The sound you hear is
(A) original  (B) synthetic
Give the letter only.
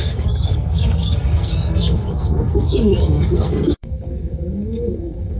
B